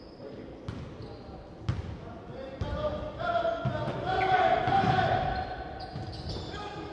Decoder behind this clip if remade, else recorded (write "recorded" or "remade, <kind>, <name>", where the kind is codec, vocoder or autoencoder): recorded